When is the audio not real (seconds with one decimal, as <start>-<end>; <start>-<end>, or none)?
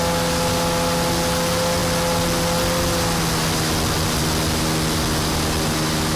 none